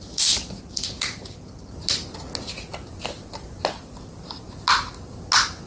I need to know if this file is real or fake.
real